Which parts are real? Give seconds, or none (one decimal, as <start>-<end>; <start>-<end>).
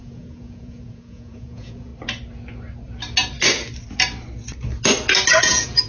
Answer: 1.9-5.4